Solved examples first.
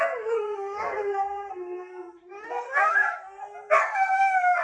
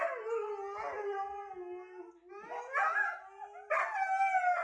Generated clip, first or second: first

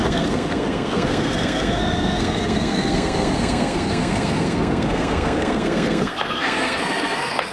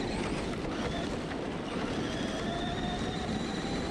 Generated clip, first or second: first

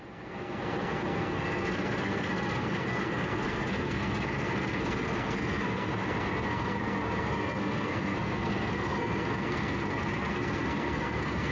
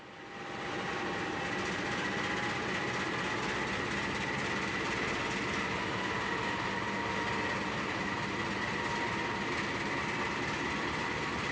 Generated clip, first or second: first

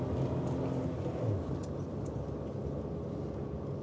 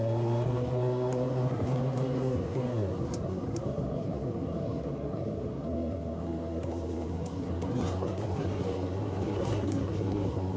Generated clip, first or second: second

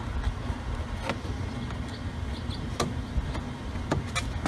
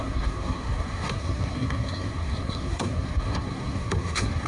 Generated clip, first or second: second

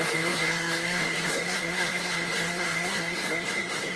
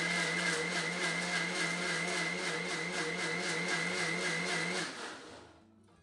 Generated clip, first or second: first